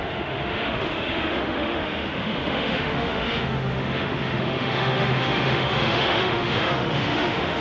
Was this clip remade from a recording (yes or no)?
yes